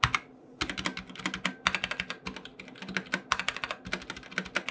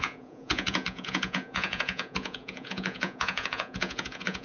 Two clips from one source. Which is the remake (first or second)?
second